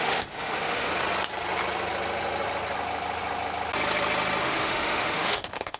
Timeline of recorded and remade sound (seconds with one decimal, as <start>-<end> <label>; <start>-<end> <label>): 0.0-0.9 remade; 0.9-4.4 recorded; 4.4-5.8 remade

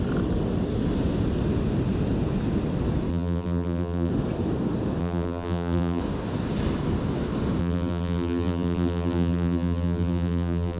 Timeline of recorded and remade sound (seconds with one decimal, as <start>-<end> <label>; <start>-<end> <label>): 0.0-3.1 recorded; 3.1-4.1 remade; 4.1-5.0 recorded; 5.0-6.0 remade; 6.0-7.6 recorded; 7.6-10.8 remade

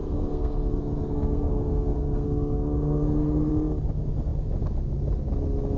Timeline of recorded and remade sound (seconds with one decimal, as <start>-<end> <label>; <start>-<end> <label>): 0.0-3.5 remade; 3.5-5.8 recorded

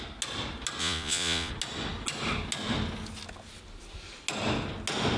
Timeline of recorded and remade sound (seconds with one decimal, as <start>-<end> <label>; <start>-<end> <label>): 0.0-0.8 recorded; 0.8-1.5 remade; 1.5-5.2 recorded